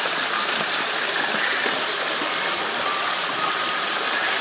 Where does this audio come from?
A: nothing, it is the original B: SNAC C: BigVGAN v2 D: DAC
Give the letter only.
A